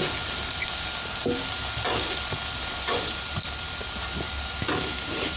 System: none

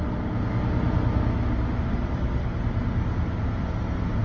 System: none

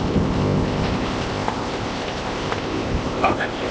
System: codec, ZipCodec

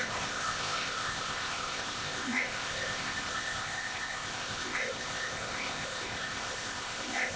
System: codec, ZipCodec